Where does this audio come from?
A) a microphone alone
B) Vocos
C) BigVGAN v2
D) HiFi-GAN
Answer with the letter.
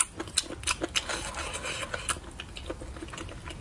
A